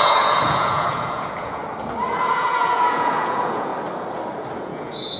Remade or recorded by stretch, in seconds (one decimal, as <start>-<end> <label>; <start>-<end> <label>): 0.0-1.6 remade; 1.6-2.1 recorded; 2.1-3.7 remade; 3.7-4.6 recorded; 4.6-5.2 remade